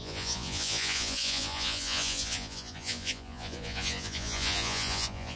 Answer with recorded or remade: remade